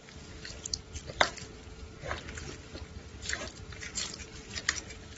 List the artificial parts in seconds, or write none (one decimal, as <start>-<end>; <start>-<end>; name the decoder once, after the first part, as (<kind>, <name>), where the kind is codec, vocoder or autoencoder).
none